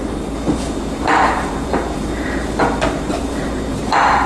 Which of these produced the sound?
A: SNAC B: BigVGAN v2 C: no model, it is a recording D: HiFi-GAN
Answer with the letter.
B